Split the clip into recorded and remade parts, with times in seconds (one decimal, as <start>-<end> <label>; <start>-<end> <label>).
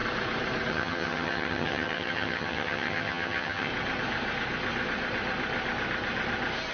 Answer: 0.0-0.7 recorded; 0.7-3.7 remade; 3.7-6.7 recorded